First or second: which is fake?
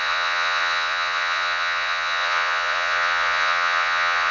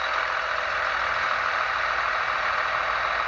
first